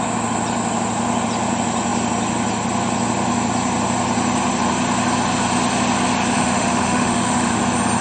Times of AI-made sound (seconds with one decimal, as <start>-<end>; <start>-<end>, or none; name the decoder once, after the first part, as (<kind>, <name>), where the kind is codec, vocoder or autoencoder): 6.3-7.6 (autoencoder, DAC-VAE)